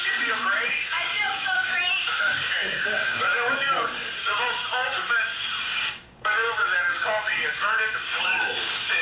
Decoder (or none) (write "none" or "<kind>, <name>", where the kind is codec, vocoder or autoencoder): codec, DAC